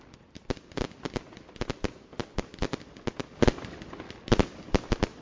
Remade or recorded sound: recorded